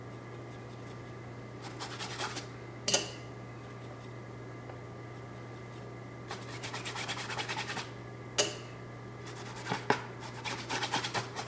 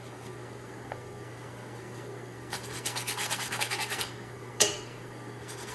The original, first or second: first